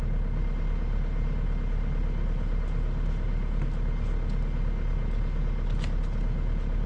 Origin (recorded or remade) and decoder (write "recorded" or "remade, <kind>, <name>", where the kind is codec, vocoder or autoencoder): recorded